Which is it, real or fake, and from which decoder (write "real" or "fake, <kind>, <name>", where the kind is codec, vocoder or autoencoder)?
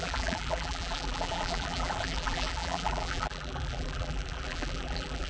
fake, vocoder, BigVGAN v2